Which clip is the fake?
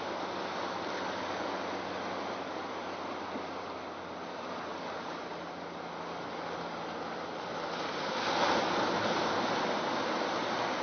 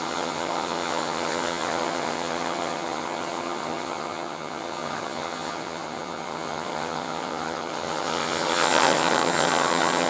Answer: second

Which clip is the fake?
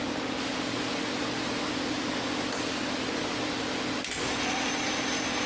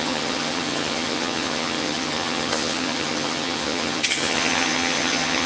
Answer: second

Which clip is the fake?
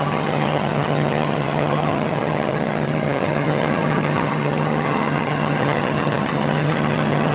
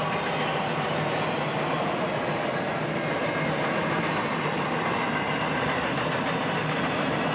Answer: first